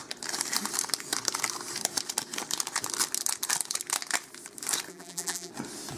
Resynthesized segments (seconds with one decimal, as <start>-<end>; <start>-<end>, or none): 4.9-5.5